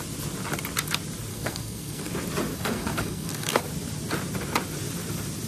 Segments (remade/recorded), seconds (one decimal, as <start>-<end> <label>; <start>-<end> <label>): 0.0-1.3 recorded; 1.3-2.1 remade; 2.1-2.5 recorded; 2.5-3.6 remade; 3.6-5.5 recorded